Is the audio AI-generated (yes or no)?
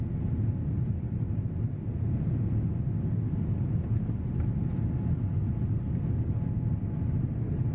no